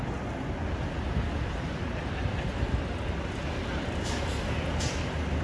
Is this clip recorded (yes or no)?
yes